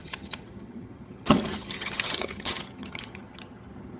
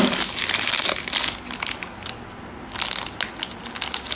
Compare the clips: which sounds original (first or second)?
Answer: second